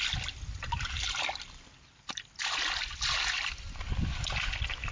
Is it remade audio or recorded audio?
recorded